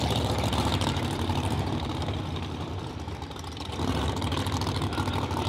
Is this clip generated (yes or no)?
yes